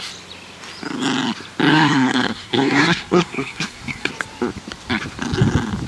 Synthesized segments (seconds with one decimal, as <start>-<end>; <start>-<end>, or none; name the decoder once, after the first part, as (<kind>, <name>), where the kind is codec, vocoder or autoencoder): 1.7-4.1 (codec, SNAC)